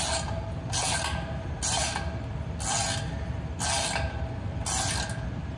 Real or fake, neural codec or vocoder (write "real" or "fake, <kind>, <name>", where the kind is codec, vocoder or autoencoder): real